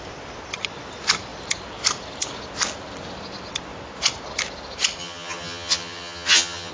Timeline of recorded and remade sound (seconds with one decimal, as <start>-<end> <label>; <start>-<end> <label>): 0.0-5.0 recorded; 5.0-6.7 remade